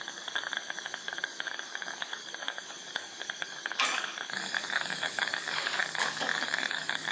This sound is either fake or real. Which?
fake